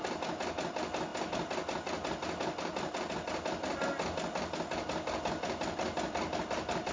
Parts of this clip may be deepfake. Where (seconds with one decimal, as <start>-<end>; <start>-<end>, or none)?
none